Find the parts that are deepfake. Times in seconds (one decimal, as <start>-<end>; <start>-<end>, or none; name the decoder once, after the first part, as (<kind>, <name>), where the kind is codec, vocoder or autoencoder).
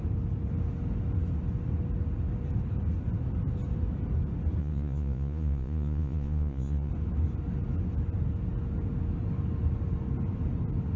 4.6-6.9 (vocoder, Vocos)